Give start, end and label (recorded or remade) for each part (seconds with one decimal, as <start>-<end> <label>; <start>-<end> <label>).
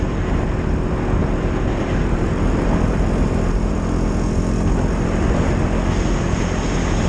0.0-1.2 recorded; 1.2-3.7 remade; 3.7-7.1 recorded